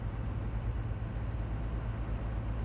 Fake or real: real